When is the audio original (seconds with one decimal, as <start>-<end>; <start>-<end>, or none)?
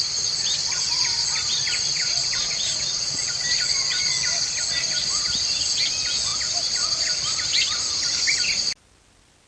0.0-1.9; 3.3-9.5